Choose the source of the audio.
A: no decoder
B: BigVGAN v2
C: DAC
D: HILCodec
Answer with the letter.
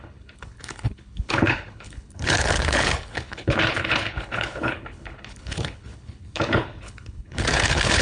D